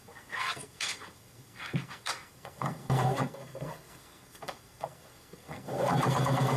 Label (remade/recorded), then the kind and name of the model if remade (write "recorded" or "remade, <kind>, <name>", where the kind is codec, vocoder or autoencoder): remade, codec, SNAC